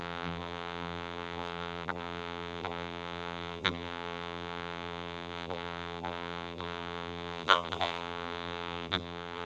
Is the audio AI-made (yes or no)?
yes